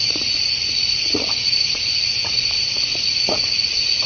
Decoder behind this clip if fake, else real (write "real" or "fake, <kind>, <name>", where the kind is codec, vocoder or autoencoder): fake, vocoder, Vocos